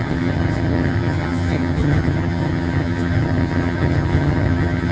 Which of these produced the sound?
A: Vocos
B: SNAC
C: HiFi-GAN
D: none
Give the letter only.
C